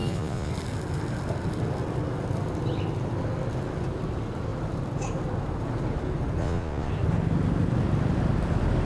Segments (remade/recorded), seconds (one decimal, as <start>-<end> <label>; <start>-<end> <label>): 0.0-0.5 remade; 0.5-6.4 recorded; 6.4-6.9 remade; 6.9-8.8 recorded